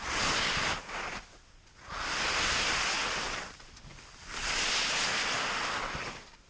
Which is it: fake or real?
real